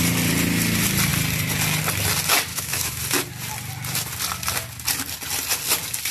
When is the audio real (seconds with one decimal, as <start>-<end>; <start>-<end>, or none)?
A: 0.0-2.5; 3.0-6.1